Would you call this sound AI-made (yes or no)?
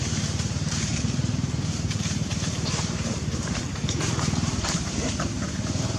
yes